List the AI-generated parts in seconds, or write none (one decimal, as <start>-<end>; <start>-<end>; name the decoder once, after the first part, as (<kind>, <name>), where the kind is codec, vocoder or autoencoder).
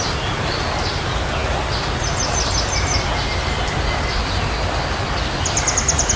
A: none